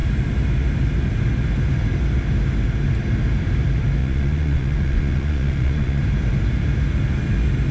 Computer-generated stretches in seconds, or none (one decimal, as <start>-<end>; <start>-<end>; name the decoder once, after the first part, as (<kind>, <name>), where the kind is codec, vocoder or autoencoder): 4.0-6.0 (vocoder, Vocos)